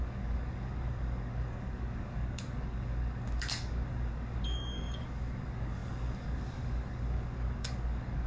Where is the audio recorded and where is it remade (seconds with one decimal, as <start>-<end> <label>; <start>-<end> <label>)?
0.0-8.3 remade